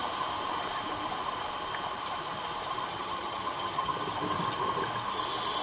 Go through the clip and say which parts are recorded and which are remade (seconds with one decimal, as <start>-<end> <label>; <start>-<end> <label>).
0.0-2.9 recorded; 2.9-3.9 remade; 3.9-5.6 recorded